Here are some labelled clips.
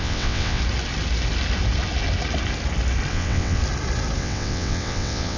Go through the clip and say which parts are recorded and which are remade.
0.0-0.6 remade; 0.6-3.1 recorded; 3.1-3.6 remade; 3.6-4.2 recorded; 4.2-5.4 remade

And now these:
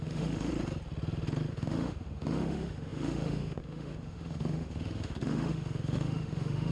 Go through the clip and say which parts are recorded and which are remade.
0.0-0.5 remade; 0.5-1.5 recorded; 1.5-6.7 remade